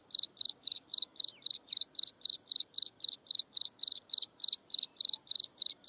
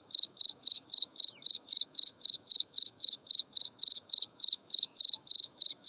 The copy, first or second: second